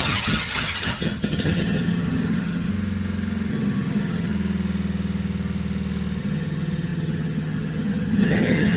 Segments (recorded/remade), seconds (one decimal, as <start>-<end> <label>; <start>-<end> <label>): 0.0-2.7 remade; 2.7-3.5 recorded; 3.5-4.3 remade; 4.3-6.2 recorded; 6.2-8.8 remade